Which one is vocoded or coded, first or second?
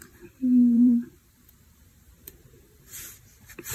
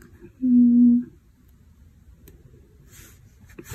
first